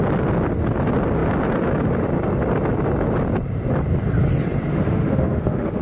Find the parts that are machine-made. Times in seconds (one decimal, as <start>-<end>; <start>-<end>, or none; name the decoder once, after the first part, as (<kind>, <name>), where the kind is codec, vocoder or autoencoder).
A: 4.7-5.8 (autoencoder, DAC-VAE)